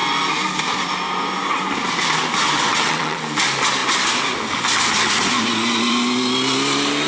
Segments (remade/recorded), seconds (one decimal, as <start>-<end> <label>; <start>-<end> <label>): 0.0-2.7 recorded; 2.7-3.2 remade; 3.2-7.1 recorded